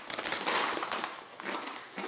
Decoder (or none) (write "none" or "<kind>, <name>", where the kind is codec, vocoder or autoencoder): none